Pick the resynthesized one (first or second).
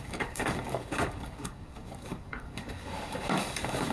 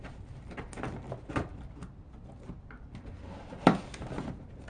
first